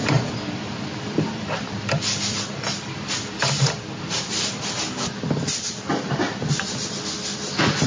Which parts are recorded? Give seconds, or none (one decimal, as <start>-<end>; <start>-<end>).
4.2-7.9